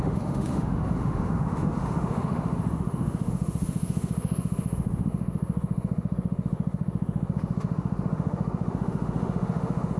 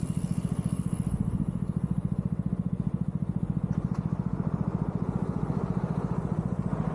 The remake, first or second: first